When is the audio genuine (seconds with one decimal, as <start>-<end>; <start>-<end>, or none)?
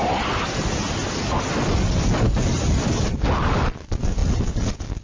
0.0-5.0